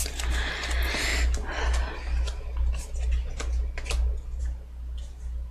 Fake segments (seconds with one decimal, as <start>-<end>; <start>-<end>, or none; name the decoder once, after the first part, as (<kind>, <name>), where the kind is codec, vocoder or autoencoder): none